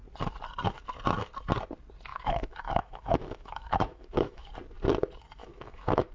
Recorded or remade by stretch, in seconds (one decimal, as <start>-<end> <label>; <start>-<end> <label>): 0.0-2.1 recorded; 2.1-4.5 remade; 4.5-5.4 recorded; 5.4-6.1 remade